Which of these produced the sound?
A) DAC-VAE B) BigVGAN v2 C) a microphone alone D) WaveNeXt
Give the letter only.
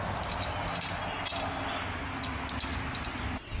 C